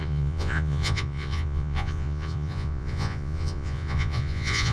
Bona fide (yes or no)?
no